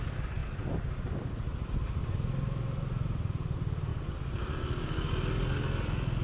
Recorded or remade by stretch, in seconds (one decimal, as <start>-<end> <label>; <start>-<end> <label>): 0.0-6.2 recorded